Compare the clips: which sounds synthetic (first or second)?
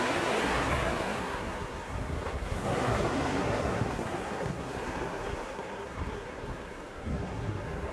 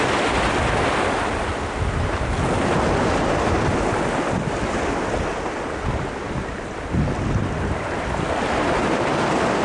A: first